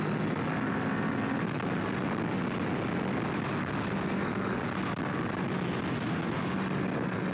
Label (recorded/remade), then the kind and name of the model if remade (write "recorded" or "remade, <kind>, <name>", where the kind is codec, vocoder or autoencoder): recorded